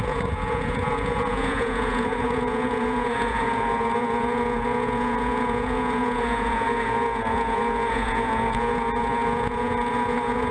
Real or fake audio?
fake